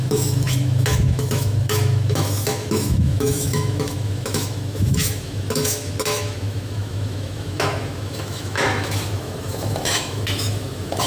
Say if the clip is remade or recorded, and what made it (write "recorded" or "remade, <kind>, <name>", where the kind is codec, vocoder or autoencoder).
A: remade, autoencoder, DAC-VAE